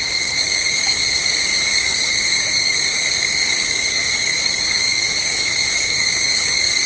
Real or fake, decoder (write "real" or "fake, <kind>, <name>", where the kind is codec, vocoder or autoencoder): fake, codec, DAC